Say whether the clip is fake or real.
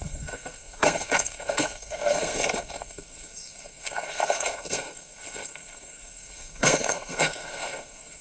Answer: fake